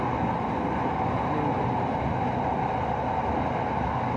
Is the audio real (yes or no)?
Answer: yes